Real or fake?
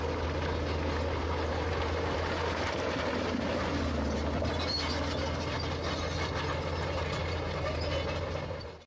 real